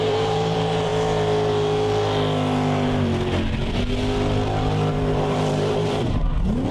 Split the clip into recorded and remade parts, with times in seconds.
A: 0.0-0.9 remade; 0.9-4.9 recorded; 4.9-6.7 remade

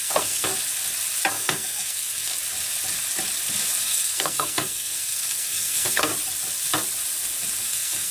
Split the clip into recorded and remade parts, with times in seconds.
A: 0.0-0.5 remade; 0.5-1.3 recorded; 1.3-2.3 remade; 2.3-3.8 recorded; 3.8-6.1 remade; 6.1-7.6 recorded; 7.6-8.1 remade

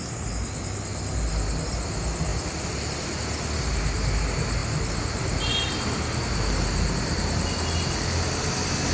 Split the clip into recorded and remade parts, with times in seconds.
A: 0.0-8.9 recorded

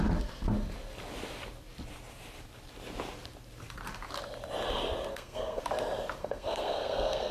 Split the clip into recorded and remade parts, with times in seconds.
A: 0.0-5.1 recorded; 5.1-5.6 remade; 5.6-6.2 recorded; 6.2-7.3 remade

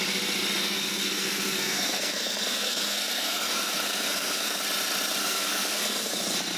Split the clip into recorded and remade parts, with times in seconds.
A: 0.0-0.6 recorded; 0.6-4.6 remade; 4.6-5.2 recorded; 5.2-6.1 remade; 6.1-6.6 recorded

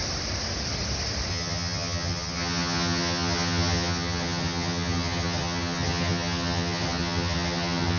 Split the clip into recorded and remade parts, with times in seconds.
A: 0.0-1.3 recorded; 1.3-8.0 remade

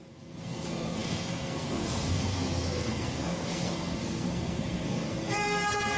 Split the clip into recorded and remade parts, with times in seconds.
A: 0.0-6.0 remade

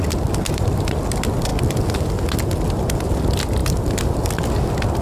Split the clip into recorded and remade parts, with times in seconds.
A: 0.0-5.0 recorded